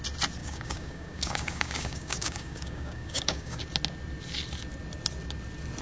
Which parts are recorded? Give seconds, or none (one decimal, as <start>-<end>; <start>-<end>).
0.0-0.4; 3.6-5.8